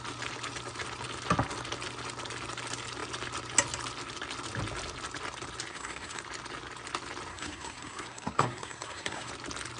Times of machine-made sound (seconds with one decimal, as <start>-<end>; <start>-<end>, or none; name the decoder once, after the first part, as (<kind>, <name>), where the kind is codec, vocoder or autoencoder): 5.7-6.2 (codec, SNAC); 7.3-9.3